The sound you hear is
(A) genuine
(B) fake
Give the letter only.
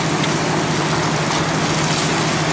A